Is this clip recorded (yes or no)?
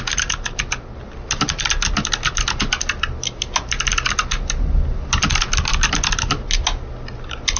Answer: yes